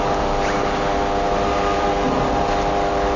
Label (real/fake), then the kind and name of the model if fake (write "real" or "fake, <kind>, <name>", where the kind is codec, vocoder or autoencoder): real